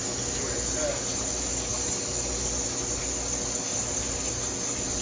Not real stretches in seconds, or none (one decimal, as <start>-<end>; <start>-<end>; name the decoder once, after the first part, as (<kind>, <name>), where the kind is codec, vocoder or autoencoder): 3.7-4.3 (vocoder, BigVGAN v2)